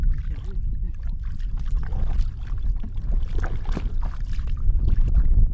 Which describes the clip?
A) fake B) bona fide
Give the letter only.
A